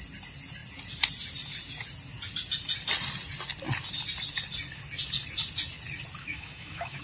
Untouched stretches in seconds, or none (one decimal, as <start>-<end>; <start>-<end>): 0.0-6.2